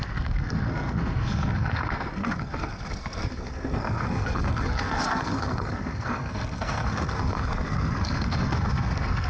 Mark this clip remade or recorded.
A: remade